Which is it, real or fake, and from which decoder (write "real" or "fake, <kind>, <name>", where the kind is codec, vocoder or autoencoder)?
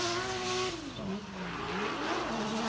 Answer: real